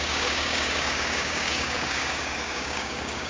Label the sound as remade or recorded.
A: remade